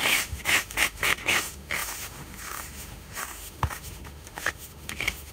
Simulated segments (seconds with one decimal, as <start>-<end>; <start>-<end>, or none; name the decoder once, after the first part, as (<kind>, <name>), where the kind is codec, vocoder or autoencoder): 0.0-5.3 (autoencoder, DAC-VAE)